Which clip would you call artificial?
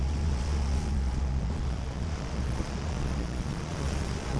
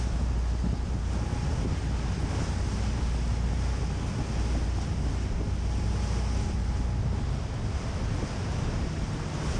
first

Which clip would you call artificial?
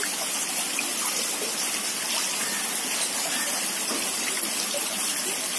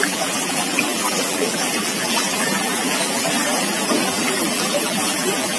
second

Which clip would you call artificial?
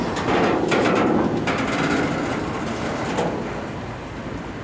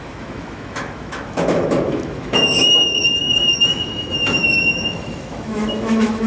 second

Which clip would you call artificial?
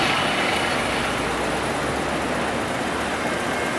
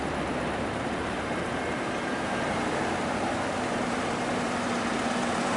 second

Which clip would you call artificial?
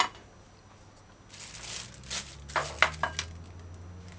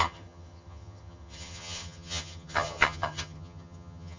second